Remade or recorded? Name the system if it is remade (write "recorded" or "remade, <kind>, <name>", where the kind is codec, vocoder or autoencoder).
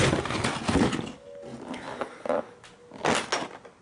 recorded